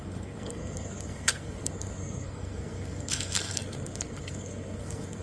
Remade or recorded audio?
remade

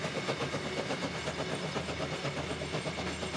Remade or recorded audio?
recorded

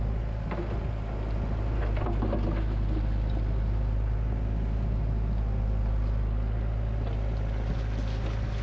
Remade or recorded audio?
recorded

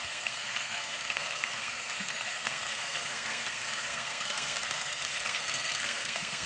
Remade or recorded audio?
remade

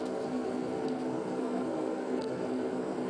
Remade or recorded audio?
remade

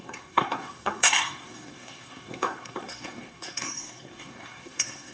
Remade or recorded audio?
remade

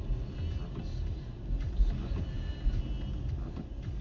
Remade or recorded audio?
recorded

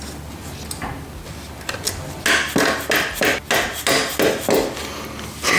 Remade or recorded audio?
recorded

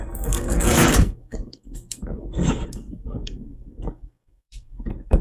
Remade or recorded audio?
remade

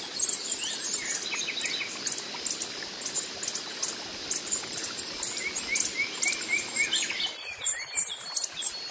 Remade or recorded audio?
recorded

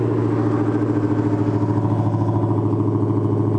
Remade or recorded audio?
recorded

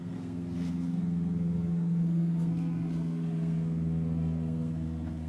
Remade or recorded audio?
remade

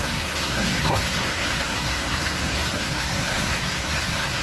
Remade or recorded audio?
remade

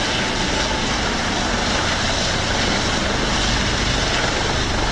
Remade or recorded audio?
recorded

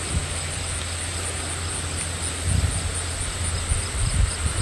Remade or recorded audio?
recorded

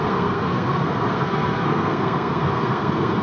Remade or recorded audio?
remade